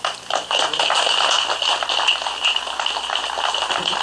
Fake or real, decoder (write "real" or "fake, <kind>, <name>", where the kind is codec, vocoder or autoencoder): real